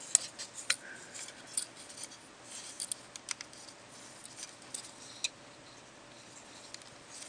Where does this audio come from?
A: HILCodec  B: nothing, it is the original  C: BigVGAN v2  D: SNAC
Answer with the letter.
B